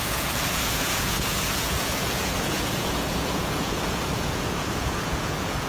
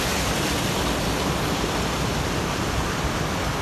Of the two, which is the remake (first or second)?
first